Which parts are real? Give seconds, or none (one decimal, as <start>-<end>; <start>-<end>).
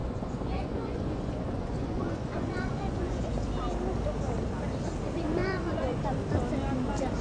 3.3-5.4; 6.0-7.2